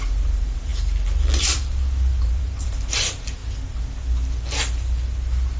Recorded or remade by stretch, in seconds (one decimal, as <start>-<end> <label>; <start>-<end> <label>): 0.0-0.7 remade; 0.7-2.2 recorded; 2.2-3.4 remade; 3.4-5.6 recorded